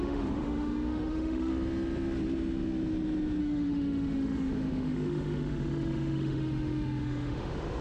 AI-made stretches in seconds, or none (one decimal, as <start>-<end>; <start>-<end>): 0.0-1.5; 3.4-7.8